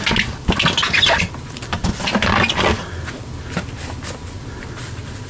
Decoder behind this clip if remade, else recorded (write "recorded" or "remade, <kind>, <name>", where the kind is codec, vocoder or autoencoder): recorded